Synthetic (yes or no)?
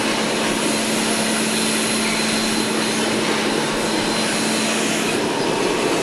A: no